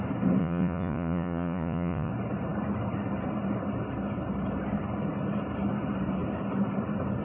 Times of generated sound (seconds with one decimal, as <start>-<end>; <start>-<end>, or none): 0.4-2.1